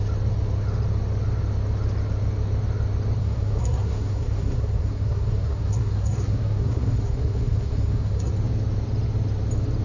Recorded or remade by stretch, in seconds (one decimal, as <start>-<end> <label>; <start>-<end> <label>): 0.0-3.2 recorded; 3.2-8.3 remade; 8.3-9.8 recorded

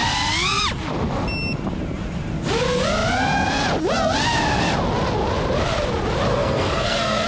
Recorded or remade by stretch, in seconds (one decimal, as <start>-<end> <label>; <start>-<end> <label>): 0.0-6.3 recorded; 6.3-7.3 remade